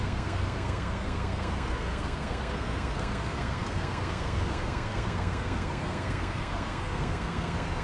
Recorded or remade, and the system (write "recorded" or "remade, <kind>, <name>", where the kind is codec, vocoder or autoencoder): remade, codec, SNAC